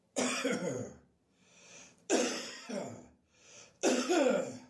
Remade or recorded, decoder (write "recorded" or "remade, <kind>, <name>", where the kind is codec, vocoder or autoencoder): remade, vocoder, BigVGAN v2